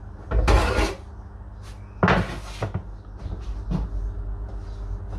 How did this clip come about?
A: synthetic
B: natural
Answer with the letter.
B